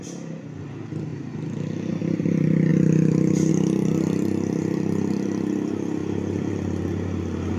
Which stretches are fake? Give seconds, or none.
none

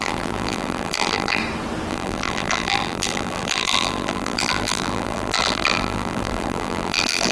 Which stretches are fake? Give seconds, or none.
0.0-1.4 (vocoder, BigVGAN v2); 1.9-7.3

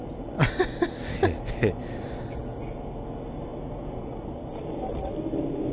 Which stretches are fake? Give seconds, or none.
none

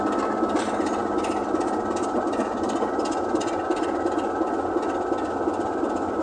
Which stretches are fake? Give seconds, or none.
none